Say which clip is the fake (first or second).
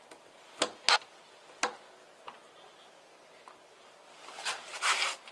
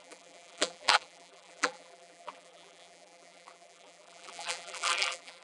second